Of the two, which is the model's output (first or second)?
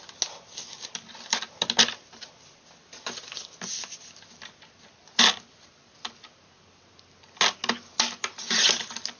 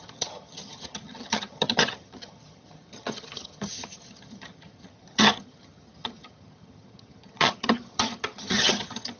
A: second